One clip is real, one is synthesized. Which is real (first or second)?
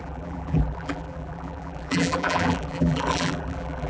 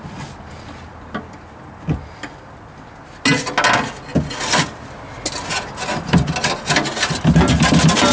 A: second